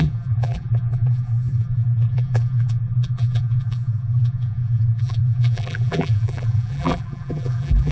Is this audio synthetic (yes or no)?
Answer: yes